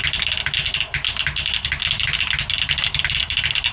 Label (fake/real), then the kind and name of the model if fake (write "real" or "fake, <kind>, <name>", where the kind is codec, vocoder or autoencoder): real